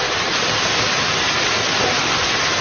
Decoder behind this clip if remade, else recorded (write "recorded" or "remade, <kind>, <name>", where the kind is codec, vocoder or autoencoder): recorded